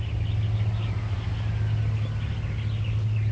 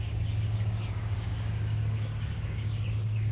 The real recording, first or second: first